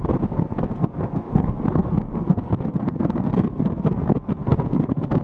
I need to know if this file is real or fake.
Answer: fake